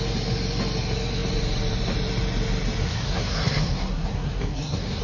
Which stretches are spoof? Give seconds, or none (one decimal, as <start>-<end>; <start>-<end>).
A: 2.8-5.0